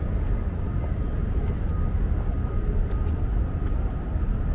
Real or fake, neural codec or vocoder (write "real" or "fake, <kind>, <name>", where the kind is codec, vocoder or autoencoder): real